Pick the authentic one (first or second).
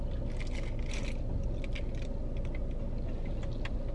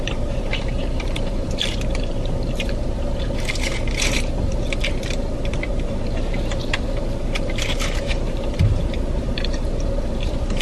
first